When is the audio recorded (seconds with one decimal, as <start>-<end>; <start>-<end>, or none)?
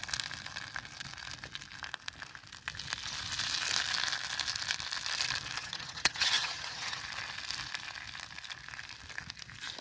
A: 0.0-5.6; 7.0-9.8